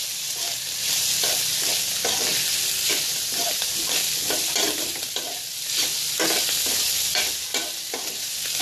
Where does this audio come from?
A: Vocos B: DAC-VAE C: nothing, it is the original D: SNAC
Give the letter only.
C